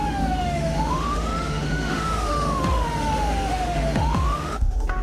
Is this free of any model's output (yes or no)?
no